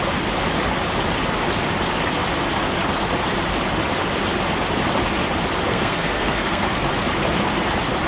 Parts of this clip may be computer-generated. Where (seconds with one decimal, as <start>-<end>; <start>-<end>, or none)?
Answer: 5.7-6.9